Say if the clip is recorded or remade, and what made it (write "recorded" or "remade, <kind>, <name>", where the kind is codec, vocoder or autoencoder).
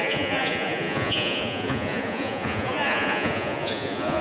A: remade, vocoder, Vocos